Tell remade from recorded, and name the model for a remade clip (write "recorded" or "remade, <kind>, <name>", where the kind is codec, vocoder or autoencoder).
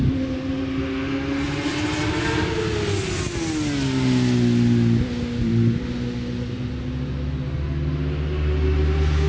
recorded